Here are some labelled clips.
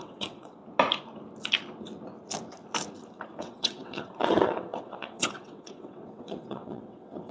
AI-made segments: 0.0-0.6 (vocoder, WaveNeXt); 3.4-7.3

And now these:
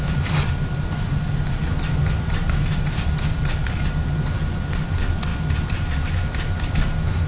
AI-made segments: none

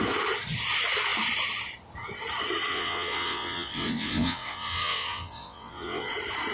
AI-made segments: 2.7-6.1 (vocoder, WaveNeXt)

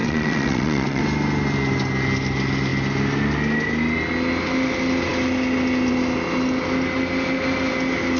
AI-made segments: 0.0-1.0 (vocoder, WaveNeXt)